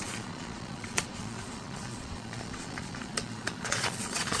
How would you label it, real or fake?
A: fake